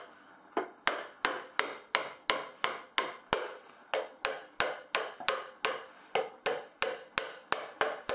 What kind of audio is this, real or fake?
real